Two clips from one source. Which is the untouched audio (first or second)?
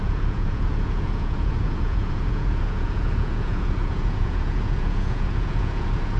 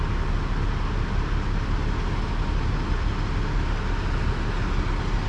second